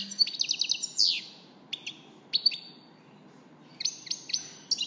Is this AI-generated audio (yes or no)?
no